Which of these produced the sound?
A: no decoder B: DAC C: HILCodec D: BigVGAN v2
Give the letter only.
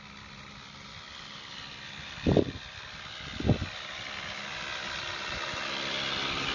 A